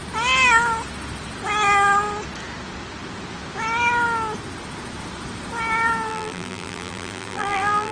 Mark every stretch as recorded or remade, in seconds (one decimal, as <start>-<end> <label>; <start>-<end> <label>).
0.0-6.1 recorded; 6.1-7.9 remade